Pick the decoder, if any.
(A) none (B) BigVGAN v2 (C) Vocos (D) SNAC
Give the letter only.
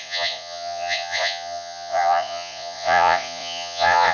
C